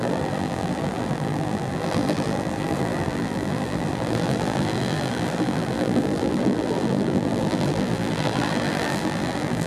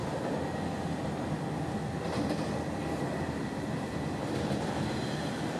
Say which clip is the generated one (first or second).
first